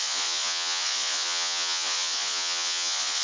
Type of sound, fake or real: fake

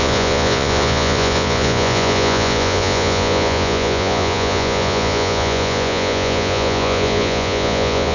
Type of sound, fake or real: fake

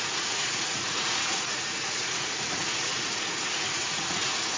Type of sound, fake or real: fake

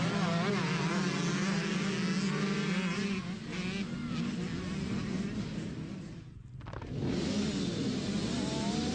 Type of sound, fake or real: real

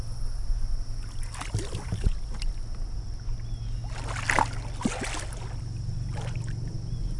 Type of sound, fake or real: real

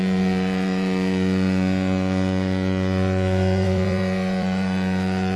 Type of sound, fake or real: fake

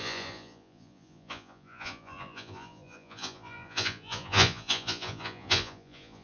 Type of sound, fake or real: fake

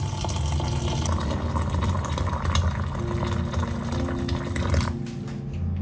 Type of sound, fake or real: real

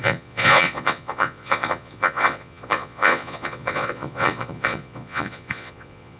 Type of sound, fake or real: fake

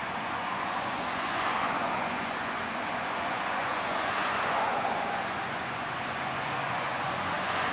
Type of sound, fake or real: fake